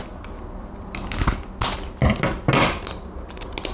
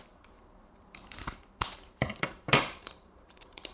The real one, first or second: first